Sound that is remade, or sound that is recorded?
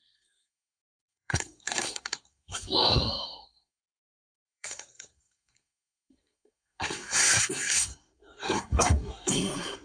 remade